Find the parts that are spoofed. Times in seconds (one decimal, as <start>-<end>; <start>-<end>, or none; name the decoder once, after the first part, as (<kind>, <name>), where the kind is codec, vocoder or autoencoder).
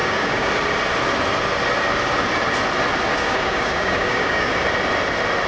0.0-0.5 (codec, DAC); 3.1-4.5